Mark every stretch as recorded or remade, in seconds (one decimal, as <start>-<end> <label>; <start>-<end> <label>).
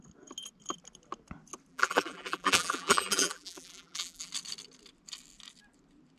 0.0-1.7 recorded; 1.7-4.3 remade; 4.3-6.2 recorded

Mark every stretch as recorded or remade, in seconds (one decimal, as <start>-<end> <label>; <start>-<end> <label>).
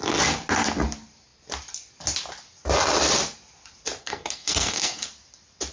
0.0-4.0 recorded; 4.0-5.1 remade; 5.1-5.7 recorded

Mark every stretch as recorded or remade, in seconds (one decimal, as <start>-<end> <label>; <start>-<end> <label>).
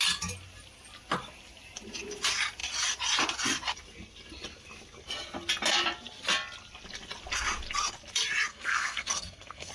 0.0-8.5 recorded; 8.5-9.7 remade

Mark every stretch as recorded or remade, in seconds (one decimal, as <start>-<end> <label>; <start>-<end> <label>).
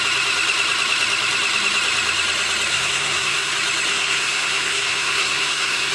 0.0-2.7 recorded; 2.7-3.5 remade; 3.5-3.9 recorded; 3.9-5.9 remade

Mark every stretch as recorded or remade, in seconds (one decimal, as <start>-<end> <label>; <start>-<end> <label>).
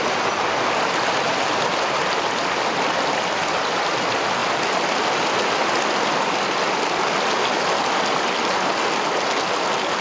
0.0-10.0 recorded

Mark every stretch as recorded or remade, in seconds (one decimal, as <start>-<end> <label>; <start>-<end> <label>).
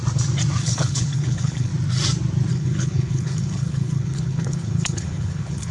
0.0-0.6 recorded; 0.6-1.7 remade; 1.7-2.5 recorded; 2.5-5.7 remade